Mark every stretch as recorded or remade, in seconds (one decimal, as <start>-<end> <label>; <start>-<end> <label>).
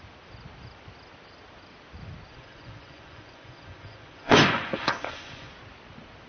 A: 0.0-2.3 recorded; 2.3-5.5 remade; 5.5-6.3 recorded